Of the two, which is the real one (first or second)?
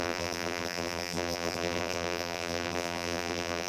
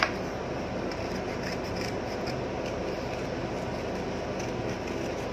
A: second